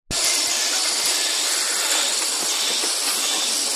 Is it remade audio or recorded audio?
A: recorded